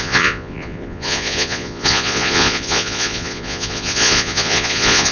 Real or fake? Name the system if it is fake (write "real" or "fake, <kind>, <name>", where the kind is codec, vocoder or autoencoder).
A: fake, vocoder, Vocos